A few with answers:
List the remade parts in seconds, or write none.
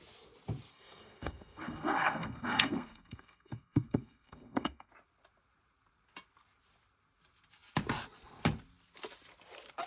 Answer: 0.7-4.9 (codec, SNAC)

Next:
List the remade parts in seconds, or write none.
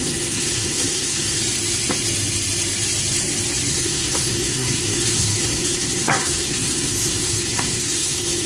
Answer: 0.0-1.4 (codec, SNAC); 3.7-8.5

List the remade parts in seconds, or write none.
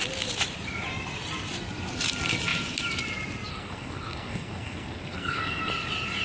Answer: 3.5-5.7 (codec, SNAC)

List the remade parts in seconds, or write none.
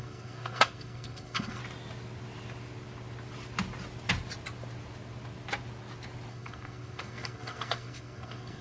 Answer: 0.0-1.6 (codec, SNAC); 6.3-8.6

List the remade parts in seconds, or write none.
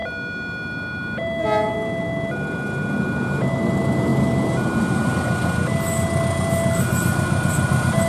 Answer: none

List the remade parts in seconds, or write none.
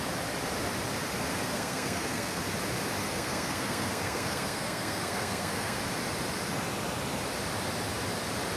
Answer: 1.3-2.4 (codec, SNAC); 3.0-5.8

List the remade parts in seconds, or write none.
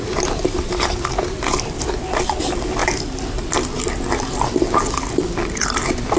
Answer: none